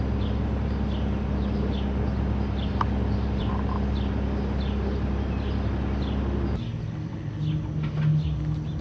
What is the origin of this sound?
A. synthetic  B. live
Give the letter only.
B